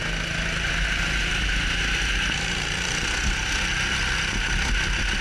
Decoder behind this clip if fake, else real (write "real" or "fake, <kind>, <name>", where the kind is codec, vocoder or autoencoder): real